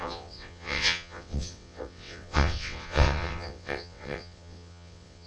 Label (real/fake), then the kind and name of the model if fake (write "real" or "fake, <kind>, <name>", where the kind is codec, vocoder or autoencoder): fake, vocoder, WaveNeXt